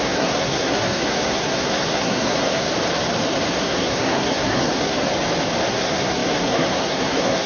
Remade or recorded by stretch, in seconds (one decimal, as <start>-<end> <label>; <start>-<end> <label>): 0.0-2.7 remade; 2.7-3.5 recorded; 3.5-5.1 remade; 5.1-5.7 recorded; 5.7-7.5 remade